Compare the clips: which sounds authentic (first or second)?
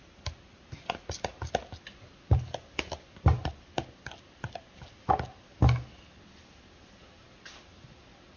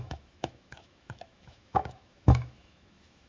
first